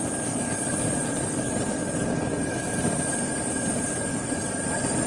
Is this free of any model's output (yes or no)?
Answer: yes